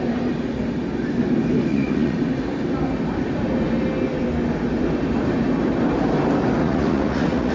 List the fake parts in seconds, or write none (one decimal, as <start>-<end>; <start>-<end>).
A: 1.7-2.2; 6.6-7.5